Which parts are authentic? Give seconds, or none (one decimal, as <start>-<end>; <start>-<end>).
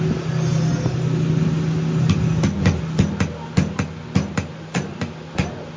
0.0-5.8